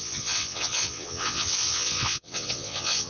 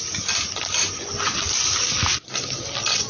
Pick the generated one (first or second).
first